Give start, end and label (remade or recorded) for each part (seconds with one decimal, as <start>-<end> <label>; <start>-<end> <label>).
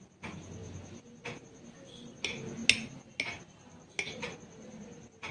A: 0.0-5.3 recorded